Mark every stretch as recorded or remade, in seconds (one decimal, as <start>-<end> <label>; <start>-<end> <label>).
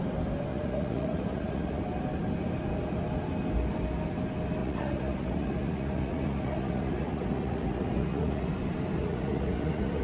0.0-0.5 recorded; 0.5-1.8 remade; 1.8-4.6 recorded; 4.6-8.5 remade; 8.5-9.0 recorded; 9.0-10.0 remade